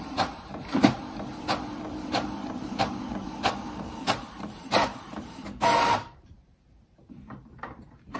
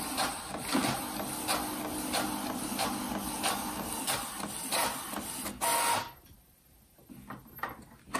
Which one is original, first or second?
second